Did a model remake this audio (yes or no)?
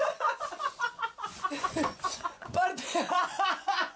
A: yes